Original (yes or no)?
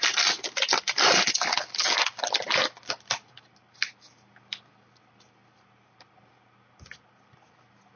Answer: yes